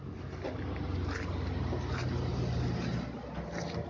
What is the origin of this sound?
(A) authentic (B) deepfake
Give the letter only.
A